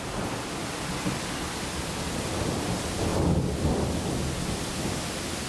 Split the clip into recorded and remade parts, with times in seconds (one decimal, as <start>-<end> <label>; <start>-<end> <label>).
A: 0.0-5.5 recorded